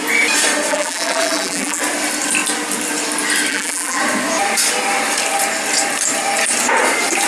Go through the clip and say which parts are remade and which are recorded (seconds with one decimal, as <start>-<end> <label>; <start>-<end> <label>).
0.0-0.7 recorded; 0.7-1.8 remade; 1.8-3.5 recorded; 3.5-4.0 remade; 4.0-7.3 recorded

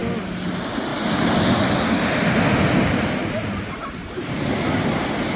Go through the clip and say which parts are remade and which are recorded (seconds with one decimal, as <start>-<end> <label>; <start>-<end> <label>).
0.0-5.4 recorded

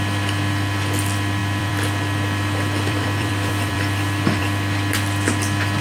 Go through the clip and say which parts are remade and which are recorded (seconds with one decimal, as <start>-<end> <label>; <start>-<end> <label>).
0.0-1.4 recorded; 1.4-4.4 remade; 4.4-5.8 recorded

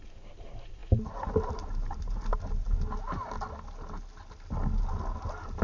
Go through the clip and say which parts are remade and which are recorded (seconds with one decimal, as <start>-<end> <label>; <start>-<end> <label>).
0.0-2.3 remade; 2.3-5.6 recorded